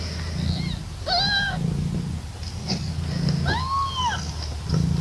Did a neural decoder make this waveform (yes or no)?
no